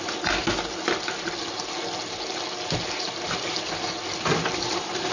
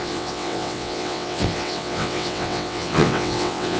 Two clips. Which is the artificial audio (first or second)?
second